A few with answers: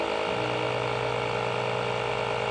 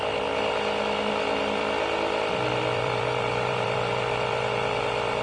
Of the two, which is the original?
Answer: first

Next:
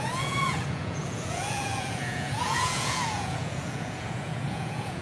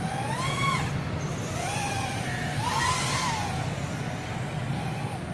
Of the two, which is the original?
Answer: second